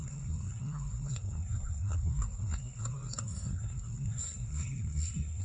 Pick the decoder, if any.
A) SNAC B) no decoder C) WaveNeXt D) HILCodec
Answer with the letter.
A